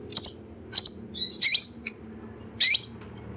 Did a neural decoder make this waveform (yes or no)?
no